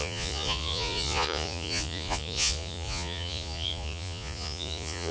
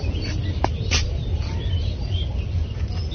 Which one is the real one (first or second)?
second